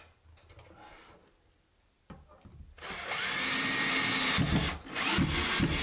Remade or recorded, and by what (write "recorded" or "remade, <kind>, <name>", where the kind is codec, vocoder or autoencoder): recorded